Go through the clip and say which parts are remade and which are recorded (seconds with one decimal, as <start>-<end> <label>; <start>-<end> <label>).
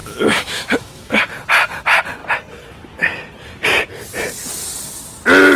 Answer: 0.0-1.2 remade; 1.2-5.6 recorded